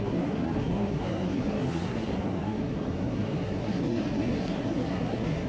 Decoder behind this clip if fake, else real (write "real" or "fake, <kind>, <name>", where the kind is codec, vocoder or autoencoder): fake, codec, SNAC